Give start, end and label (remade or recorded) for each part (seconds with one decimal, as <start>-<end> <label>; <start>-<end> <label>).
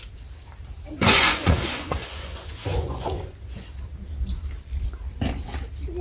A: 0.0-0.9 recorded; 0.9-3.7 remade; 3.7-6.0 recorded